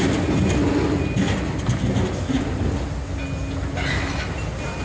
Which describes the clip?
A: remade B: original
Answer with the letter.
B